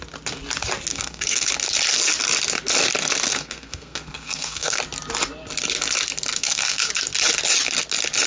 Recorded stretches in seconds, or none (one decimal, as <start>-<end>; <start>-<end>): 0.0-0.9; 1.5-3.3; 4.8-6.3; 6.9-8.3